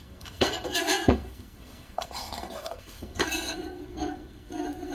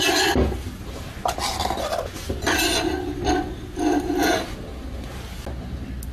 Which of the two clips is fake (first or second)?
first